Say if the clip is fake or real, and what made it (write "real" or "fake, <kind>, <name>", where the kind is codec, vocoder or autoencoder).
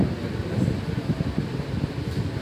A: real